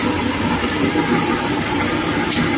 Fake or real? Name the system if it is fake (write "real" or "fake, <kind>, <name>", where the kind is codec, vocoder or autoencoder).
fake, vocoder, BigVGAN v2